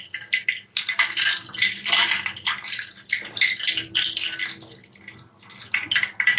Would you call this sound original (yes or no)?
yes